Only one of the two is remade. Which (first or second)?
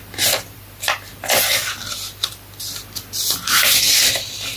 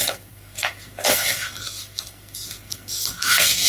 second